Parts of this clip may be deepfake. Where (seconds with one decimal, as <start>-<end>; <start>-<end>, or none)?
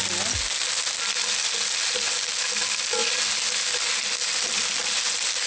none